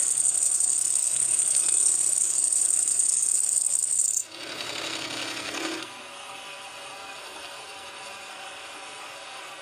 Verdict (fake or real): fake